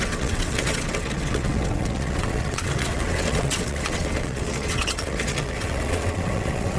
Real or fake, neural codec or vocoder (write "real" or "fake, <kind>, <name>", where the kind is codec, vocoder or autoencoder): fake, vocoder, WaveNeXt